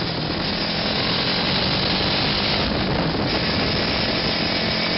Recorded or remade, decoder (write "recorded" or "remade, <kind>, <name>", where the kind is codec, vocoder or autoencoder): recorded